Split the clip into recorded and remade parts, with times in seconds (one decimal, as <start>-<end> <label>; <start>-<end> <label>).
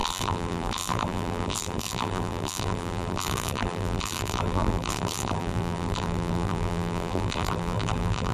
0.0-8.3 remade